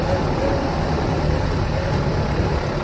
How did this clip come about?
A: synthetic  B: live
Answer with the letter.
B